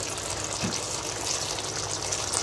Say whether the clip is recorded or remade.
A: recorded